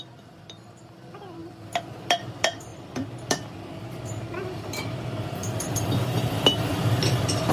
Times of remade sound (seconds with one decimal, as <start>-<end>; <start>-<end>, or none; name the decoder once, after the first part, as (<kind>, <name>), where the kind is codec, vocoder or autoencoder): 0.0-1.4 (vocoder, BigVGAN v2); 2.0-7.5